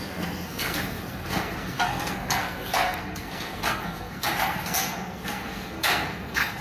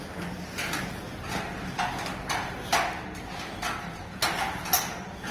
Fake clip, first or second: first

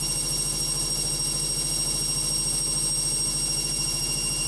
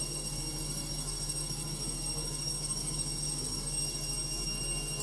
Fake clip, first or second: second